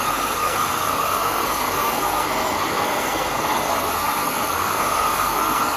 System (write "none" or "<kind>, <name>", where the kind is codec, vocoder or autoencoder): codec, SNAC